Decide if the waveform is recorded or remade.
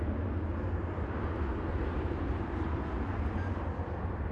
recorded